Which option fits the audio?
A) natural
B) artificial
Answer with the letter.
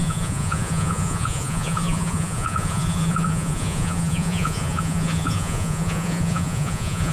B